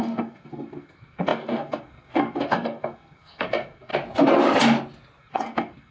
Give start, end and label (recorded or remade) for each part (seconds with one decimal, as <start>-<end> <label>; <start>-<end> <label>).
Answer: 0.0-3.9 remade; 3.9-5.2 recorded; 5.2-5.9 remade